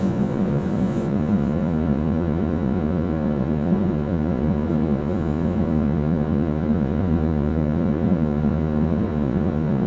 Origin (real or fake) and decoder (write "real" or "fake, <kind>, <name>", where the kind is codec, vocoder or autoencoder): fake, vocoder, Vocos